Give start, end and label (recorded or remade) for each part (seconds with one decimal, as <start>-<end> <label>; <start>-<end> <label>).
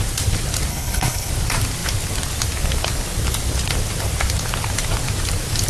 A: 0.0-0.7 recorded; 0.7-1.3 remade; 1.3-5.7 recorded